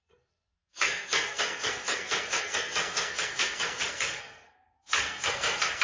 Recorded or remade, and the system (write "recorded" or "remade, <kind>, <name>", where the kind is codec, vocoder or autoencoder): remade, codec, SNAC